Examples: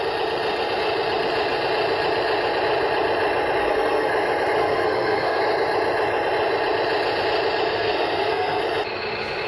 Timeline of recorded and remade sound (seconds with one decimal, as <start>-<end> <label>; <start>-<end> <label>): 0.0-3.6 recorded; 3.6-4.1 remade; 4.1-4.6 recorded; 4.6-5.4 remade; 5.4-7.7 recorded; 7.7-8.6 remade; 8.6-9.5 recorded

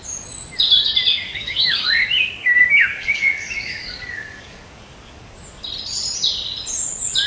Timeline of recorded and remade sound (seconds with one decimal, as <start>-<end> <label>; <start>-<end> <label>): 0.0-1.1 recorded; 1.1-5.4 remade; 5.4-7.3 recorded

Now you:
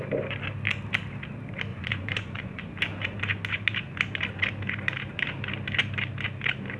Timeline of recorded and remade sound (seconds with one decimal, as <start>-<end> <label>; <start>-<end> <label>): 0.0-1.7 recorded; 1.7-2.6 remade; 2.6-6.8 recorded

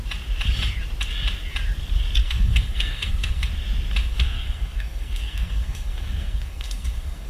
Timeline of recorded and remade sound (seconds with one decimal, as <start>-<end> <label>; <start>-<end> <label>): 0.0-2.2 recorded; 2.2-3.5 remade; 3.5-4.0 recorded; 4.0-7.3 remade